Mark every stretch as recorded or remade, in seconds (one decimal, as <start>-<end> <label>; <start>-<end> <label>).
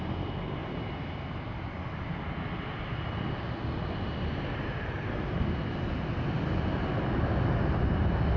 0.0-8.4 recorded